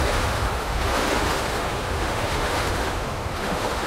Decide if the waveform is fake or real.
fake